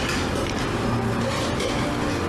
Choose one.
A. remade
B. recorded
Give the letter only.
B